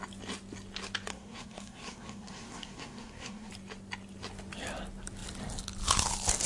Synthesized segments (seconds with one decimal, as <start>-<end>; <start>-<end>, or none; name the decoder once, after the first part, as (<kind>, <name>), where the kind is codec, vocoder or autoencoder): 1.1-3.5 (codec, SNAC)